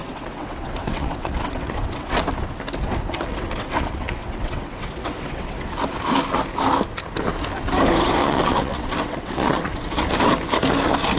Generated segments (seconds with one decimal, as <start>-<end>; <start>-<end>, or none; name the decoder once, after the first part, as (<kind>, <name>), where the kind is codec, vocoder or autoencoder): 0.0-2.2 (vocoder, WaveNeXt); 3.3-5.7; 8.2-10.2